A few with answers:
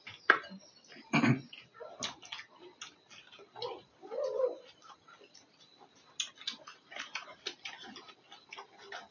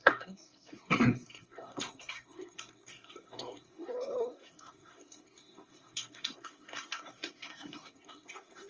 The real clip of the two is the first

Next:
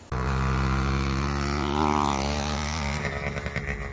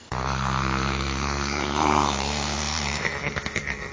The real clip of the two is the first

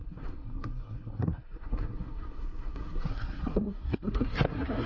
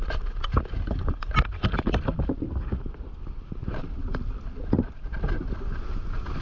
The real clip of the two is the second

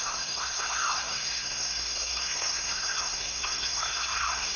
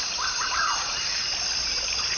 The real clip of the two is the second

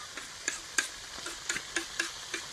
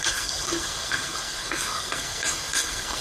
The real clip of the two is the first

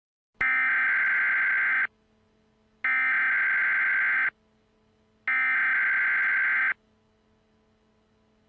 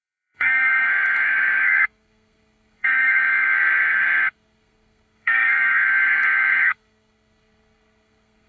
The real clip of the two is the first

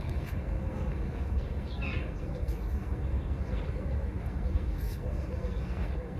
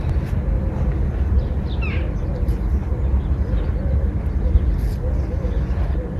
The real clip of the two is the second